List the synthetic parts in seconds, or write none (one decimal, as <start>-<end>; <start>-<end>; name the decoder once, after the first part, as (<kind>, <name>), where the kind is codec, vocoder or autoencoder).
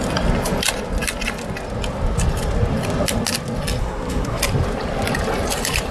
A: 3.8-4.4 (codec, SNAC)